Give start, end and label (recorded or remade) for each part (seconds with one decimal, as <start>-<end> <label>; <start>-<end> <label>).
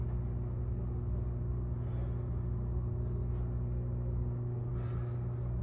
0.0-5.6 recorded